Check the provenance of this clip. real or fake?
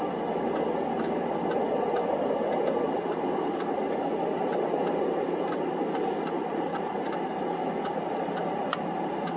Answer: real